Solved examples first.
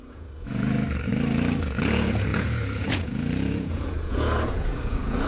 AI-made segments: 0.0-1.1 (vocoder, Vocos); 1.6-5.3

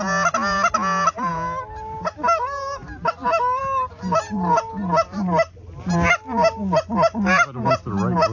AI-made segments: none

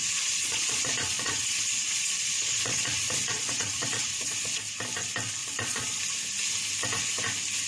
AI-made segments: 0.0-4.6 (vocoder, Vocos); 5.4-6.0

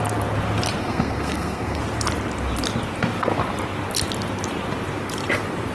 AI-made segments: 0.8-1.8 (codec, SNAC)

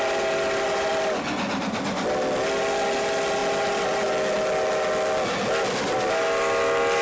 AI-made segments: none

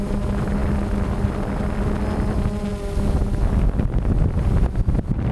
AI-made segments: none

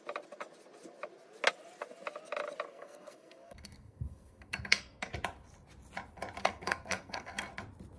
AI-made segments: 2.7-5.1 (codec, SNAC); 6.4-7.5

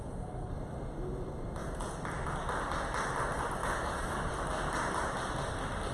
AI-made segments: 3.6-4.3 (autoencoder, DAC-VAE)